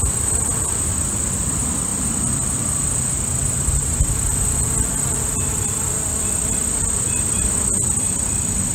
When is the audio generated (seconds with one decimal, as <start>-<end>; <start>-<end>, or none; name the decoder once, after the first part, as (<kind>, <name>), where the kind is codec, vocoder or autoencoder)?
0.0-8.7 (vocoder, BigVGAN v2)